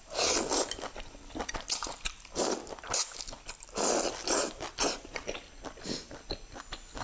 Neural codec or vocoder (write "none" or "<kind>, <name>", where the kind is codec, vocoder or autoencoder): none